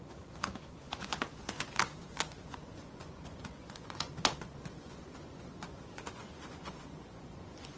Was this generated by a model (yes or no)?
yes